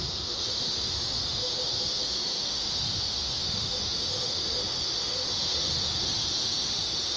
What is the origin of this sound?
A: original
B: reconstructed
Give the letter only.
B